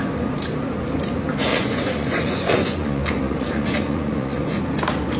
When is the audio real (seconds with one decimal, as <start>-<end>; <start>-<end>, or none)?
0.0-1.5; 4.6-5.2